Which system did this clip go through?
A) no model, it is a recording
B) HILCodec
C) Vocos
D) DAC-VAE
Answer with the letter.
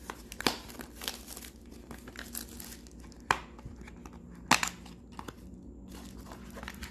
A